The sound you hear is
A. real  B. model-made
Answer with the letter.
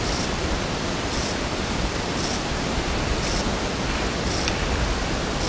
A